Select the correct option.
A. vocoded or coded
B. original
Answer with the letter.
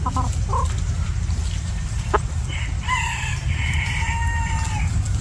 B